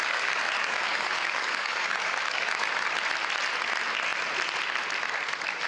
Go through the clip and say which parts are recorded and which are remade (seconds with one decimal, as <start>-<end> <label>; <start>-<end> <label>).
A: 0.0-2.7 remade; 2.7-5.7 recorded